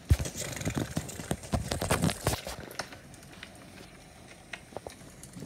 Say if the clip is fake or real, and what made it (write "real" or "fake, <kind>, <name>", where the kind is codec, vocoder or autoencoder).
real